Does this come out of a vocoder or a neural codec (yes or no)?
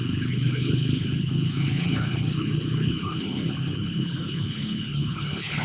yes